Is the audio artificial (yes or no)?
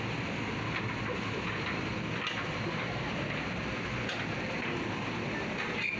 no